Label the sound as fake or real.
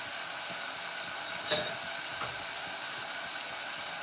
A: real